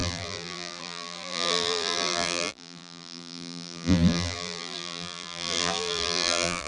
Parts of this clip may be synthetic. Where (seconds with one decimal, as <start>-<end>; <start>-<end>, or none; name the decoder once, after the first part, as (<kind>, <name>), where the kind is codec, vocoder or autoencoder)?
0.0-6.7 (vocoder, BigVGAN v2)